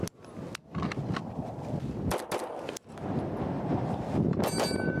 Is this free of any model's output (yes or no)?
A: yes